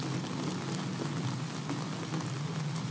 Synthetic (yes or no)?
no